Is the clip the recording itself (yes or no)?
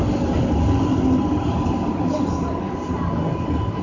yes